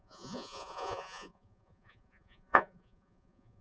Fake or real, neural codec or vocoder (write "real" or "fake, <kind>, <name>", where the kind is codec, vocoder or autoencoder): fake, vocoder, Vocos